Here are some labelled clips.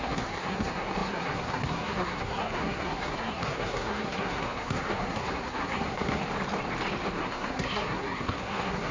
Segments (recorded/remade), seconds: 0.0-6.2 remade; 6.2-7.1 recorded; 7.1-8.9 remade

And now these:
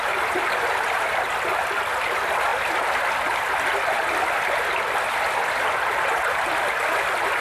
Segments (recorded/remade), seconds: 0.0-7.4 recorded

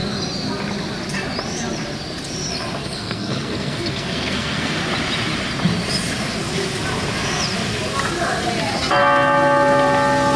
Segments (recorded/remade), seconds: 0.0-2.8 recorded; 2.8-4.8 remade; 4.8-10.4 recorded